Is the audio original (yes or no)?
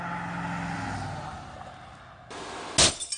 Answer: yes